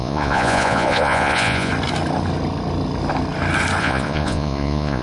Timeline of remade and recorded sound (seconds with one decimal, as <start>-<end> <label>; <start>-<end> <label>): 0.0-1.7 remade; 1.7-3.8 recorded; 3.8-5.0 remade